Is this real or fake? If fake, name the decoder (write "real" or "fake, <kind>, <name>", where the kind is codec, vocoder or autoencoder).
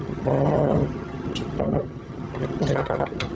fake, vocoder, HiFi-GAN